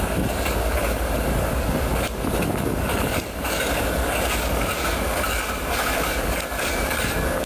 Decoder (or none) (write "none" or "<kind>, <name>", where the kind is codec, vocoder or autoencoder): codec, DAC